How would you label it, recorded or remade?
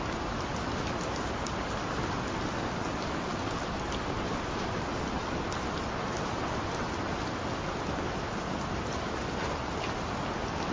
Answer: recorded